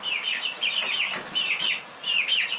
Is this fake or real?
fake